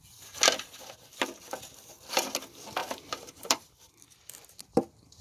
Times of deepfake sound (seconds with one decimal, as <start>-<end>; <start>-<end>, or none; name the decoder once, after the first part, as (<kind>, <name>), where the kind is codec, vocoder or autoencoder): 2.8-3.9 (vocoder, BigVGAN v2)